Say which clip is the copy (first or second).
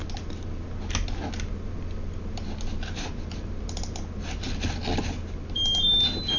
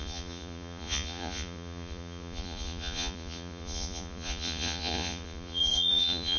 second